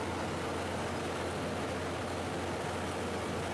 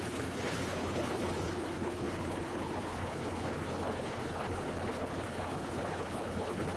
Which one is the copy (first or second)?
second